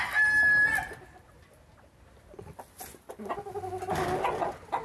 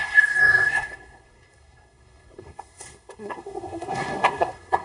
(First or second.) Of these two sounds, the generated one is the second